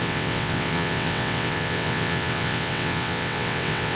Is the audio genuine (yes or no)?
no